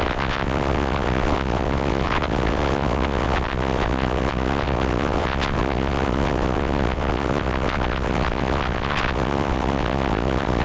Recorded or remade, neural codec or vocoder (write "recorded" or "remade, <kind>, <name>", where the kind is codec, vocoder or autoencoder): remade, vocoder, WaveNeXt